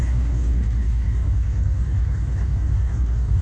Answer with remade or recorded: remade